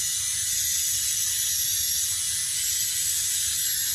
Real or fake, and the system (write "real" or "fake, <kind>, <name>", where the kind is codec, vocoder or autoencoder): real